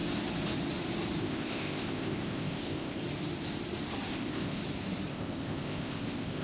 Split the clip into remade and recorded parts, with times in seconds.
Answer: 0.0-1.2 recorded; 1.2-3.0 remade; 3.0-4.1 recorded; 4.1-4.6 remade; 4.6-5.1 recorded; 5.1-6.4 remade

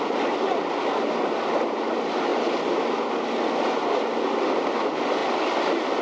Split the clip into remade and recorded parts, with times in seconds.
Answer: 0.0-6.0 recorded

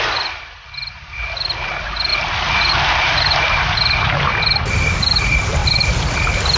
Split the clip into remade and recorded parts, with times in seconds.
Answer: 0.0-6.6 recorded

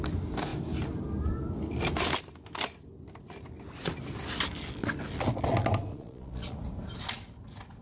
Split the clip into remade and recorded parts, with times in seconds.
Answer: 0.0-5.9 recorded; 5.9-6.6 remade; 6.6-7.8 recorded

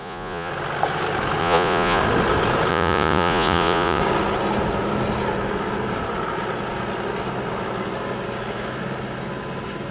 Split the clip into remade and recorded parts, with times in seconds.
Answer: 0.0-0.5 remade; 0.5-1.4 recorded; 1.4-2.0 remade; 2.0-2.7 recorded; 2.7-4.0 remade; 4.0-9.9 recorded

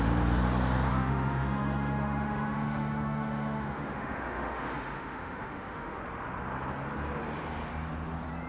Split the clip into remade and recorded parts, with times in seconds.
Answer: 0.0-0.9 recorded; 0.9-6.0 remade; 6.0-8.5 recorded

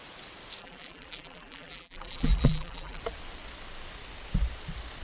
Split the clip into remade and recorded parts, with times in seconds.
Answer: 0.0-0.6 recorded; 0.6-3.0 remade; 3.0-5.0 recorded

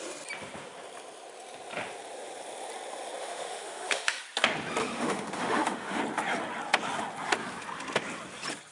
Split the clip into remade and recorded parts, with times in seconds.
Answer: 0.0-3.2 recorded; 3.2-4.2 remade; 4.2-4.8 recorded; 4.8-6.0 remade; 6.0-8.7 recorded